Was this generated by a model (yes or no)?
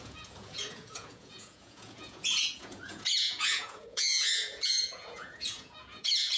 yes